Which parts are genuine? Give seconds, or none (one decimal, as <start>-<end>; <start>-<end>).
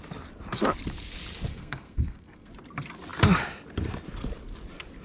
0.0-1.5; 2.5-5.0